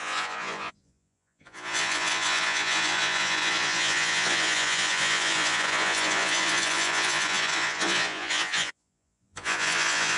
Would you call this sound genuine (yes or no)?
no